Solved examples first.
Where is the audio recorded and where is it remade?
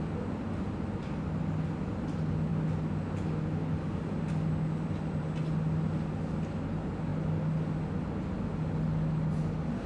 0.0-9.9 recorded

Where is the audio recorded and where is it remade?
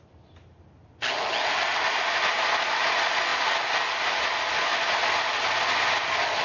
0.0-6.4 recorded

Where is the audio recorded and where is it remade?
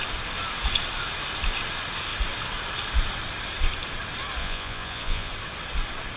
0.0-4.4 recorded; 4.4-5.3 remade; 5.3-6.2 recorded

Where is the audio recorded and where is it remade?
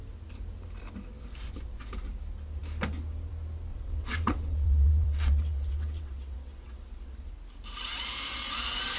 0.0-3.7 recorded; 3.7-7.3 remade; 7.3-9.0 recorded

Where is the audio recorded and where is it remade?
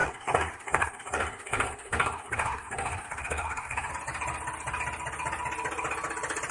0.0-3.9 remade; 3.9-6.5 recorded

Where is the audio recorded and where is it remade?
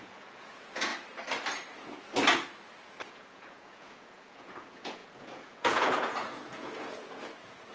0.0-0.9 remade; 0.9-3.0 recorded; 3.0-7.7 remade